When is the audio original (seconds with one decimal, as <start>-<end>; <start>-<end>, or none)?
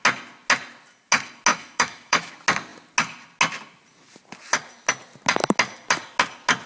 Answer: 0.0-1.5; 2.3-6.7